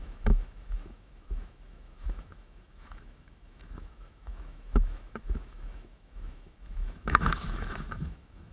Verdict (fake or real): fake